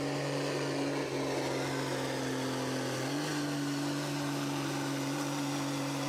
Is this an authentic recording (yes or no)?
yes